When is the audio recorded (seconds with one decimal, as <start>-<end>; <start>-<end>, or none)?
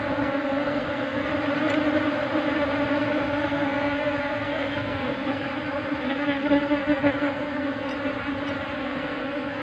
1.3-2.9; 5.5-6.0; 7.9-8.8